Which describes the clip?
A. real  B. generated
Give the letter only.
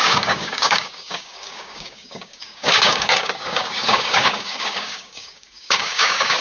B